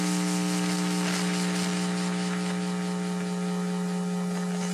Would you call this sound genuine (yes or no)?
yes